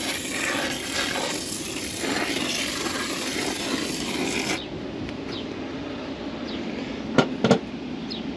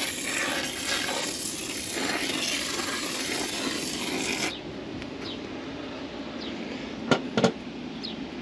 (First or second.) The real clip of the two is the second